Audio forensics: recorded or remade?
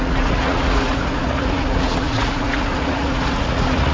remade